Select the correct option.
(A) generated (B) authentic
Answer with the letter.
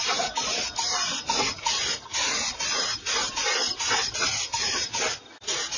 B